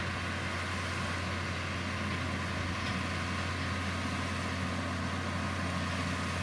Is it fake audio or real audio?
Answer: real